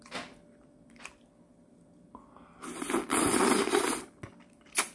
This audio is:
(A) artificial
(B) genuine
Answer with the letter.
B